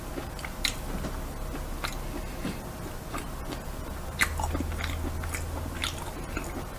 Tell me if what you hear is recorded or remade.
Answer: recorded